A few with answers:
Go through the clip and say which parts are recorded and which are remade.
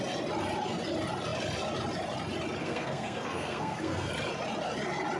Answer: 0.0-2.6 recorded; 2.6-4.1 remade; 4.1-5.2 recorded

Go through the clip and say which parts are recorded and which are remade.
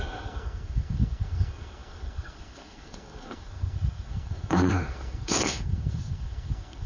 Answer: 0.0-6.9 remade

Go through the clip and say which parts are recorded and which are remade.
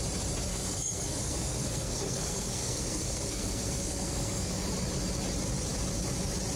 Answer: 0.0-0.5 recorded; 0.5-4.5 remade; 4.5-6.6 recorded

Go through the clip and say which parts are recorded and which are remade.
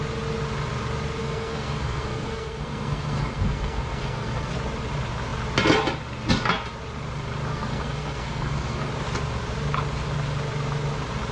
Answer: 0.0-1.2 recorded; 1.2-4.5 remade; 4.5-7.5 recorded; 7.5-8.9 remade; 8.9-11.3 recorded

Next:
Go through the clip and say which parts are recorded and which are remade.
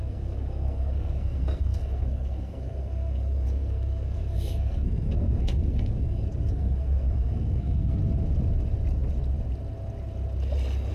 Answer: 0.0-8.0 remade; 8.0-10.9 recorded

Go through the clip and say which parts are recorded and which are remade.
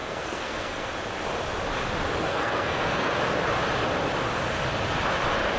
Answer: 0.0-0.9 remade; 0.9-2.3 recorded; 2.3-3.1 remade; 3.1-5.6 recorded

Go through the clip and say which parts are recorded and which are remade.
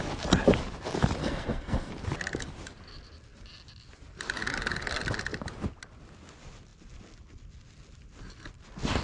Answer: 0.0-1.2 recorded; 1.2-1.9 remade; 1.9-9.0 recorded